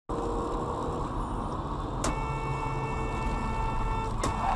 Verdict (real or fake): real